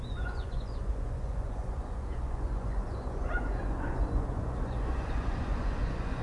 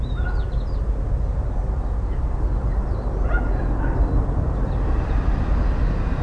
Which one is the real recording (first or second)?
second